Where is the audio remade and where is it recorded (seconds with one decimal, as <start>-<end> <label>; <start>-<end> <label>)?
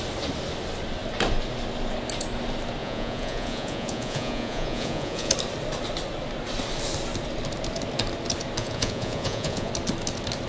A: 0.0-2.8 recorded; 2.8-5.3 remade; 5.3-8.6 recorded; 8.6-9.7 remade; 9.7-10.5 recorded